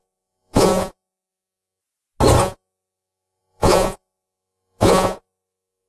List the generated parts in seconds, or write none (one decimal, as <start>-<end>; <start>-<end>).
0.0-1.8; 2.4-5.9